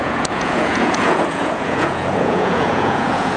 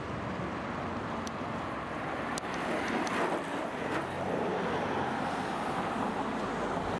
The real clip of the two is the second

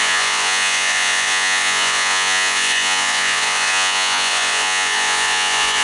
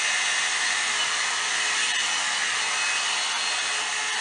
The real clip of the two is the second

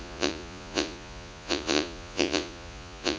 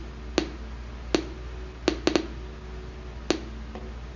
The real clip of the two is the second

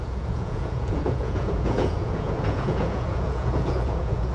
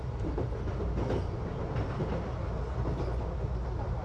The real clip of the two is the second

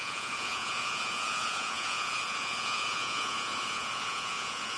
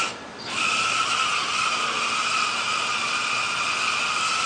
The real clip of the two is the second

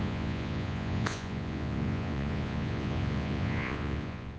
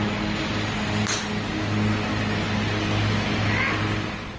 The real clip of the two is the second